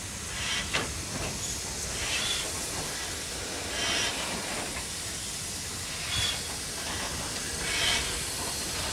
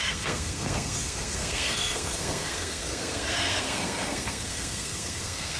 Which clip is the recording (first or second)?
first